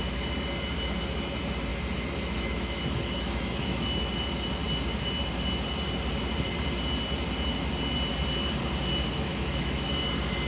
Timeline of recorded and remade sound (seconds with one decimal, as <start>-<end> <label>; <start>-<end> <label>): 0.0-1.7 recorded; 1.7-4.1 remade; 4.1-9.3 recorded; 9.3-9.9 remade; 9.9-10.5 recorded